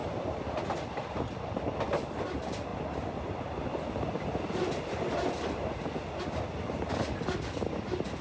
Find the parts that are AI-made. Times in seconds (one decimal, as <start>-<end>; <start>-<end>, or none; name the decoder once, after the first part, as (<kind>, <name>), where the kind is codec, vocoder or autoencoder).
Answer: none